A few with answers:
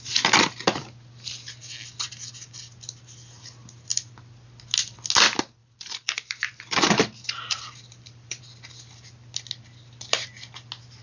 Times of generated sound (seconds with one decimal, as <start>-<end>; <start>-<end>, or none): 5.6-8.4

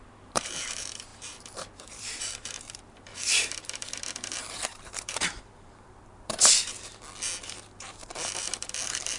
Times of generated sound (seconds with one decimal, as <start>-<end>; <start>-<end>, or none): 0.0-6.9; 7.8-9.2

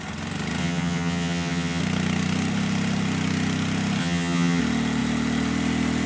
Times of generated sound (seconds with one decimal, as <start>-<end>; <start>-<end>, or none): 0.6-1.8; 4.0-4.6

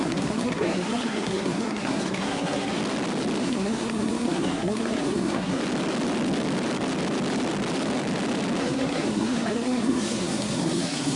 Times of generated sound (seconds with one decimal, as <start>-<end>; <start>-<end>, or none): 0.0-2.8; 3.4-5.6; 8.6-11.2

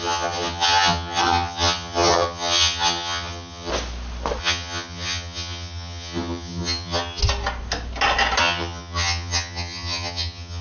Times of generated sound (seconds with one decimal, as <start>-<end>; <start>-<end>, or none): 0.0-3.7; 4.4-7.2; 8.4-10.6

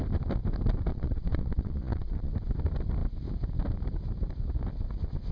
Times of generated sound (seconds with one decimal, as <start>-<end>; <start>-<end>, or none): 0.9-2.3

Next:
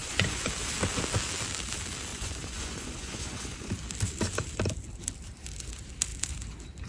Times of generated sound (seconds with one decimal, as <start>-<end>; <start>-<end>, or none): 0.0-0.5; 2.1-3.7

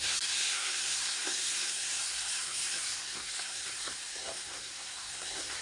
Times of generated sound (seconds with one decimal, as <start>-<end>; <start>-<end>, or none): 0.0-5.6